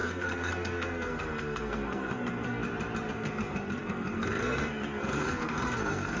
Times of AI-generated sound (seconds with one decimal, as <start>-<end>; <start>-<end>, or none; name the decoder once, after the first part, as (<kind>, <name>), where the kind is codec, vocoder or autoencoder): 0.0-2.6 (codec, SNAC); 3.1-6.2